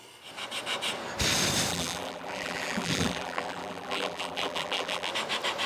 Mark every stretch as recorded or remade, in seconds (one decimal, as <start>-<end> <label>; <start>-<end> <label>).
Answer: 0.0-1.7 recorded; 1.7-5.1 remade; 5.1-5.7 recorded